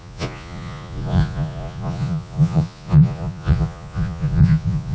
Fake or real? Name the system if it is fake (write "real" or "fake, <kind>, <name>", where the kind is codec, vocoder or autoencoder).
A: fake, vocoder, Vocos